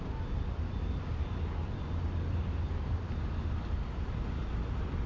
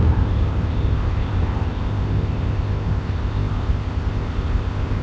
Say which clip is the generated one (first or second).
second